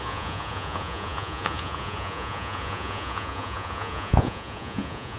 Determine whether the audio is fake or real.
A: fake